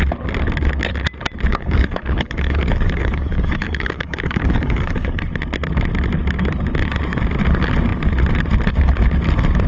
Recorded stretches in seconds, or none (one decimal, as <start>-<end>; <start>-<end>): 0.0-1.5; 5.2-9.7